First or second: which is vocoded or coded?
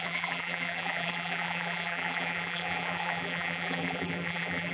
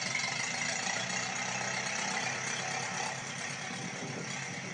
first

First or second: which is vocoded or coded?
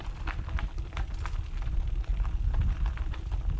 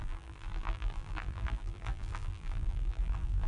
second